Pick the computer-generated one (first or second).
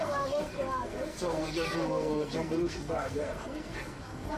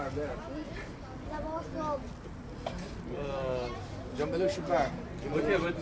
first